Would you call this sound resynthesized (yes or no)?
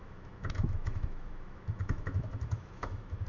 yes